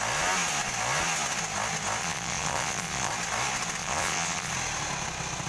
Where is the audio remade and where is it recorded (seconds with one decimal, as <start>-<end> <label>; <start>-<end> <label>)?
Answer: 0.0-2.0 recorded; 2.0-3.1 remade; 3.1-3.8 recorded; 3.8-4.5 remade; 4.5-5.5 recorded